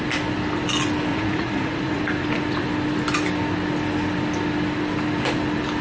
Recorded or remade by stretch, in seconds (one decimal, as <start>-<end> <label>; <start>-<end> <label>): 0.0-1.1 recorded; 1.1-2.0 remade; 2.0-5.8 recorded